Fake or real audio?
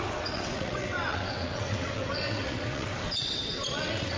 fake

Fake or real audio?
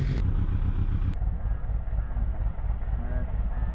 real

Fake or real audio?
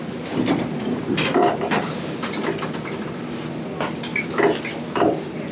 real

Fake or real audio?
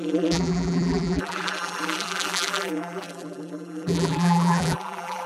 fake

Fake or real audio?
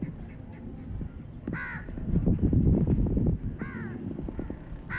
real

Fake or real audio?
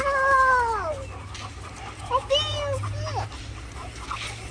real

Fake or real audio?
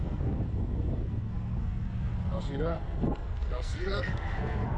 fake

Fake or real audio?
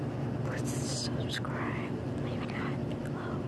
real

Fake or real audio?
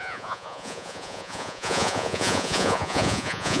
fake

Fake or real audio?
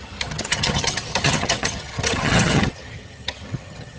fake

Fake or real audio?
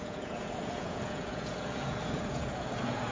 fake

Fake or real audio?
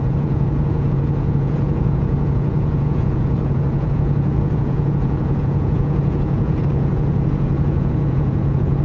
fake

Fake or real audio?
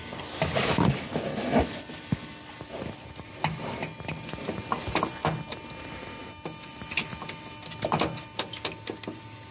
real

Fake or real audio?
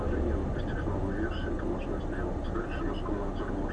real